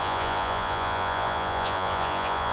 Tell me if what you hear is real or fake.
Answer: fake